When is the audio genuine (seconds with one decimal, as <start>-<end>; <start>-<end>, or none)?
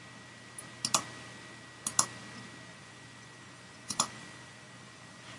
0.0-2.7